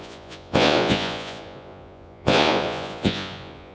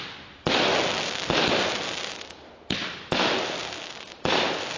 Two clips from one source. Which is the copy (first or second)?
first